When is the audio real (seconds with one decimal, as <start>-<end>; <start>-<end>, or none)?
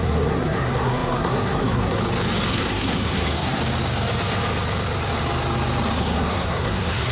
2.0-2.5; 3.6-6.0